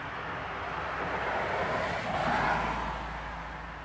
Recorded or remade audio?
recorded